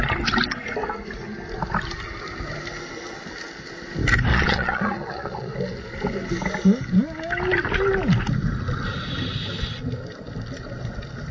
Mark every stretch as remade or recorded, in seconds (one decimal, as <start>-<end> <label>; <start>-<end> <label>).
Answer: 0.0-4.3 recorded; 4.3-5.5 remade; 5.5-11.3 recorded